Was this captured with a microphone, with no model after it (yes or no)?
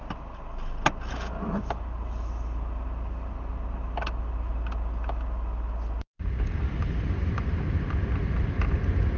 yes